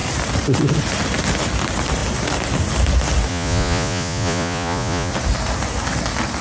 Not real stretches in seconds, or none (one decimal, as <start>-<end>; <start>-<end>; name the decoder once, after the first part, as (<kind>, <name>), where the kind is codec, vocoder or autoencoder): 3.3-5.1 (vocoder, Vocos)